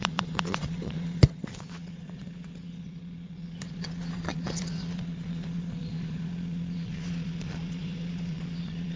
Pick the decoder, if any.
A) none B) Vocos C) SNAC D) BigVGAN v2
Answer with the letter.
B